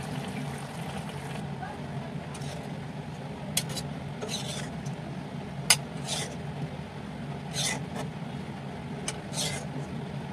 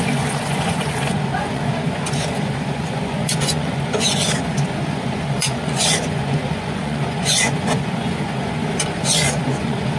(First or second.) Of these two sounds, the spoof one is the second